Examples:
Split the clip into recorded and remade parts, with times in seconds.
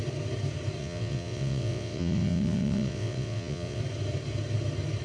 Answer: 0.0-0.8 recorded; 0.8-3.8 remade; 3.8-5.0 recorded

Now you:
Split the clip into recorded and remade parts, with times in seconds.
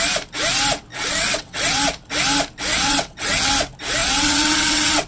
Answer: 0.0-0.9 recorded; 0.9-1.8 remade; 1.8-2.7 recorded; 2.7-3.5 remade; 3.5-4.0 recorded; 4.0-5.1 remade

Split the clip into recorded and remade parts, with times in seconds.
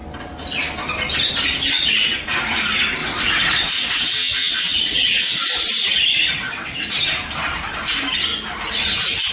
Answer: 0.0-3.0 recorded; 3.0-5.4 remade; 5.4-6.4 recorded; 6.4-7.0 remade; 7.0-9.3 recorded